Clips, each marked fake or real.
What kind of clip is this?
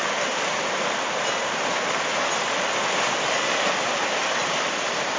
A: real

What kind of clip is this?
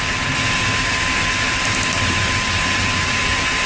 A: real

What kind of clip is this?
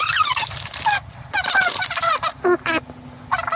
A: real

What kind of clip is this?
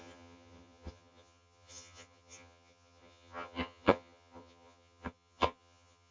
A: fake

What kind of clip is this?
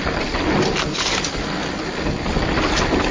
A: real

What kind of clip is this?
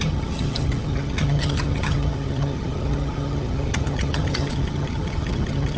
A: fake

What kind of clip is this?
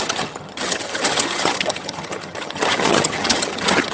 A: fake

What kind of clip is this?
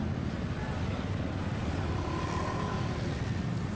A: real